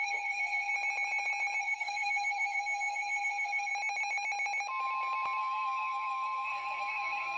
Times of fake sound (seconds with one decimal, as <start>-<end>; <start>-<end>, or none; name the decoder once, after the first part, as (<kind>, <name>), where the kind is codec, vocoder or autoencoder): 0.0-0.7 (codec, SNAC); 1.6-3.7; 5.4-7.4